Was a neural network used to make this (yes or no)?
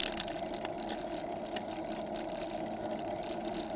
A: no